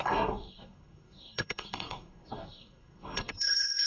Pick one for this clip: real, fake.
fake